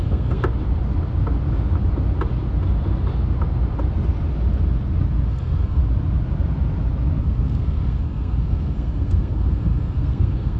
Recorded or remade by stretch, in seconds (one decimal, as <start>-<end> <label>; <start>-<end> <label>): 0.0-0.4 remade; 0.4-5.3 recorded; 5.3-5.8 remade; 5.8-7.2 recorded; 7.2-10.6 remade